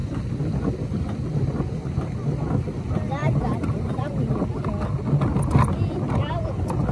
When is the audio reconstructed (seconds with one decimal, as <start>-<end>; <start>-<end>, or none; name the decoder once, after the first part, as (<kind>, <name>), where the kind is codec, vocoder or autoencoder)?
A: 3.2-4.3 (vocoder, BigVGAN v2)